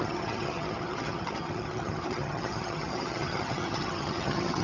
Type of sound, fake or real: fake